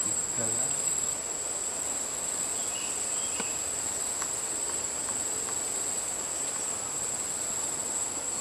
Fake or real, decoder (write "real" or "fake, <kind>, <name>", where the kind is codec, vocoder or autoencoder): real